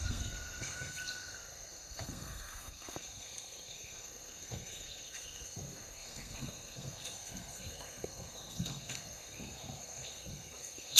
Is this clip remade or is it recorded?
remade